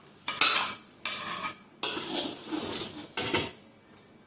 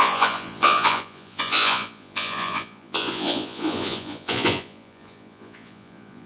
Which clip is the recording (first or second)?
first